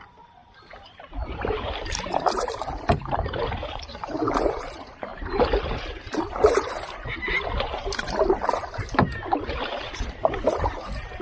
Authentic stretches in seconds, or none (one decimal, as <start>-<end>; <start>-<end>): none